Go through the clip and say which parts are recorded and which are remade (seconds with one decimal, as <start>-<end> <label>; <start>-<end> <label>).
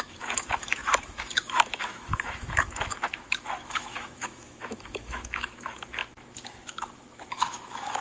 0.0-8.0 remade